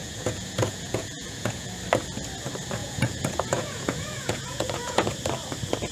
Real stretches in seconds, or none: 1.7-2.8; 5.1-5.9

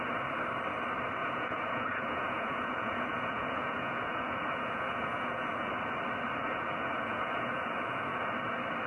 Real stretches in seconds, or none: 0.0-1.2; 5.7-6.4; 8.2-8.9

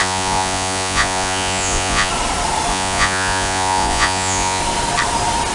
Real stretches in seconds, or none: 2.1-2.7; 4.6-5.5

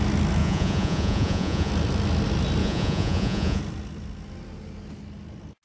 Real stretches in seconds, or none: 0.0-0.4; 1.7-2.6; 3.6-5.6

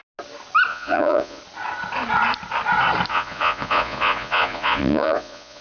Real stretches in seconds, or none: 0.0-0.7; 1.4-3.1

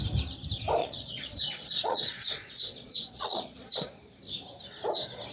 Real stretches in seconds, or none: 0.0-0.8; 4.0-5.3

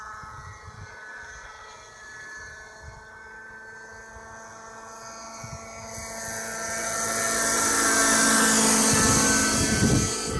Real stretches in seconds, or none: 0.0-10.4

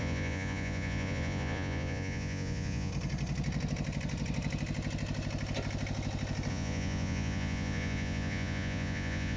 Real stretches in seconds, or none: 2.9-6.5